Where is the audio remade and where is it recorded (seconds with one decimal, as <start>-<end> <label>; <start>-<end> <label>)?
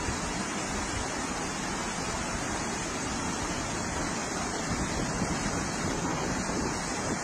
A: 0.0-7.2 recorded